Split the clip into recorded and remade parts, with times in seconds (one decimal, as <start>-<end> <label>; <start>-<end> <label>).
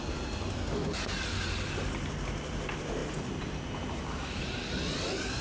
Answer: 0.0-5.4 recorded